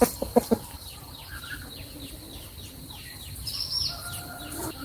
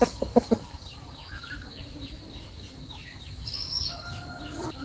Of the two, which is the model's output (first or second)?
second